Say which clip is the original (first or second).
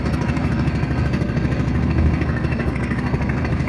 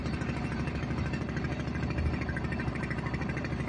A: second